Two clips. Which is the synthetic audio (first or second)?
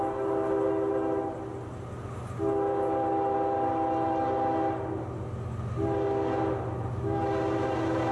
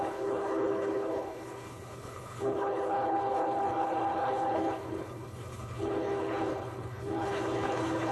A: second